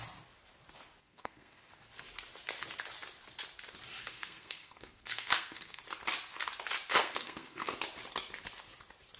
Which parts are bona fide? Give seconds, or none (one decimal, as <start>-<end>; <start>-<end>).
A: 0.0-1.0; 1.7-4.0; 5.8-7.0; 7.7-9.2